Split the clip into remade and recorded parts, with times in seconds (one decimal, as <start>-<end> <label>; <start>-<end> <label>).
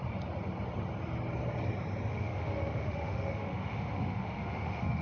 0.0-2.1 recorded; 2.1-5.0 remade